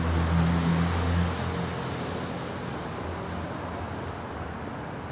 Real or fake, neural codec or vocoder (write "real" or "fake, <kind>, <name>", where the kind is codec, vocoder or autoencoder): real